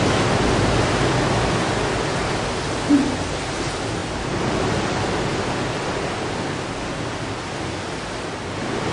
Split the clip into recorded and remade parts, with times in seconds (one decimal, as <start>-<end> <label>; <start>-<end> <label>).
0.0-8.9 recorded